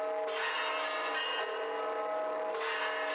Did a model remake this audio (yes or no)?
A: no